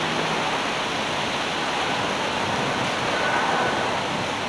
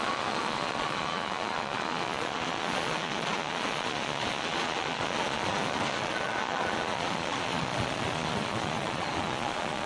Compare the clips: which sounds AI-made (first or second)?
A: second